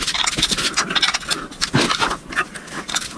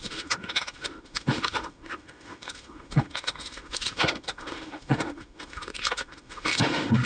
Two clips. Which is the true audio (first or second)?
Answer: first